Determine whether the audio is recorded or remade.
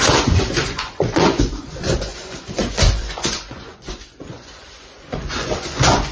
remade